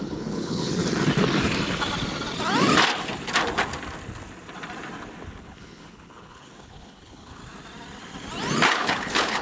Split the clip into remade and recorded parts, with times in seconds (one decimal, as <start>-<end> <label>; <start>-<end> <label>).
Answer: 0.0-0.8 remade; 0.8-5.4 recorded; 5.4-7.4 remade; 7.4-8.7 recorded; 8.7-9.4 remade